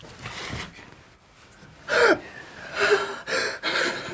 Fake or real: real